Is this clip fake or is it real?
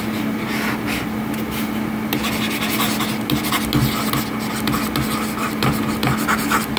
real